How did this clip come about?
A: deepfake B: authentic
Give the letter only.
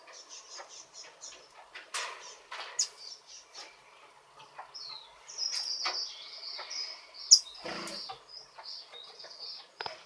B